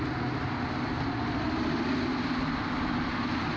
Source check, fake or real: real